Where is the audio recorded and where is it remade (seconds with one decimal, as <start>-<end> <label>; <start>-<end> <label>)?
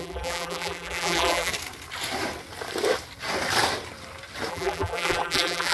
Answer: 0.0-1.5 remade; 1.5-4.5 recorded; 4.5-5.7 remade